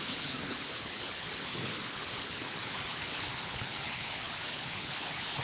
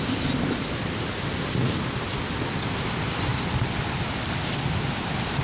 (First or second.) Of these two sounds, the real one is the second